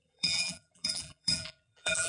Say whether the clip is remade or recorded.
remade